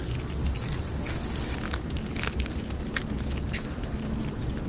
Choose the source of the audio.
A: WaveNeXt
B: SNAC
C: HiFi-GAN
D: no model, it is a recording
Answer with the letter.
D